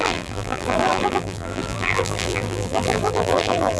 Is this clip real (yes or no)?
no